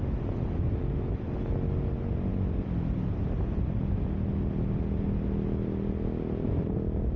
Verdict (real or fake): real